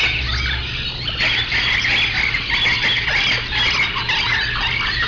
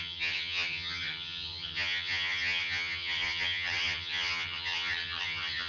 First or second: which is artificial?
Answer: second